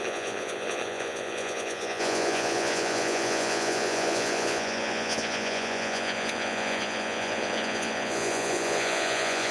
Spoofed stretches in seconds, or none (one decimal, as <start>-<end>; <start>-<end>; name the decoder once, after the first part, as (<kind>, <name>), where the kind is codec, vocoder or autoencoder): 0.0-9.5 (vocoder, Vocos)